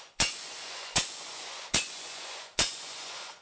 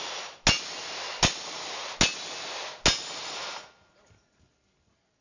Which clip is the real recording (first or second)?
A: second